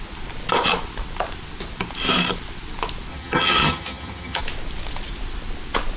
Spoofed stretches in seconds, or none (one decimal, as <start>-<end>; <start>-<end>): 3.1-4.4